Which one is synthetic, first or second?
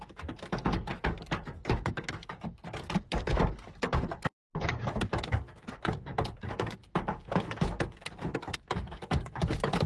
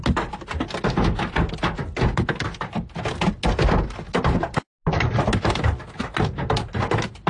first